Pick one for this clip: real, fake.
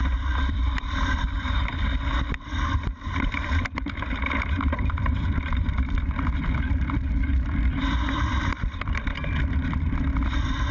fake